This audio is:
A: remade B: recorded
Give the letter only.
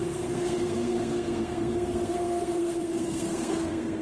A